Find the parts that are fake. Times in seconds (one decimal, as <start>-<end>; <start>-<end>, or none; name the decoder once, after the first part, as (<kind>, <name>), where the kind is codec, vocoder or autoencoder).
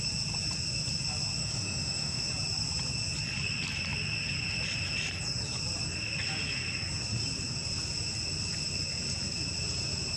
1.4-2.3 (autoencoder, DAC-VAE)